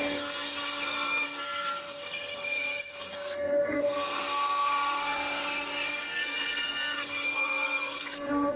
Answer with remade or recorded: remade